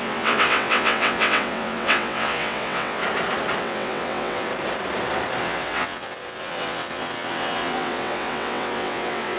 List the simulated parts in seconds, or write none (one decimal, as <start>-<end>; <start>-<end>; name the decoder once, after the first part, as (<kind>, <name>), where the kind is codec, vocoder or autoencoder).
0.0-3.0 (vocoder, WaveNeXt); 3.6-4.5; 5.4-9.4